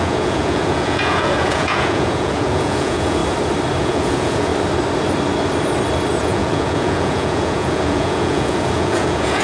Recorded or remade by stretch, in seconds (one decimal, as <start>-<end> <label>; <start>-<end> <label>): 0.0-3.2 remade; 3.2-3.8 recorded; 3.8-4.5 remade; 4.5-6.2 recorded; 6.2-9.4 remade